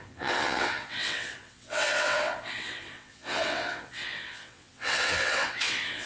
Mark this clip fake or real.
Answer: fake